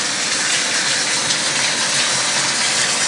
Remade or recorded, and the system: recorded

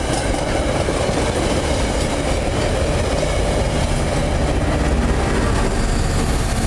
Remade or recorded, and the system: recorded